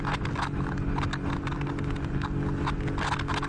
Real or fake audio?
real